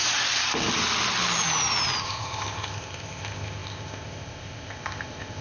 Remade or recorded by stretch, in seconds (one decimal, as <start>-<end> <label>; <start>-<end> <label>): 0.0-2.0 recorded; 2.0-5.4 remade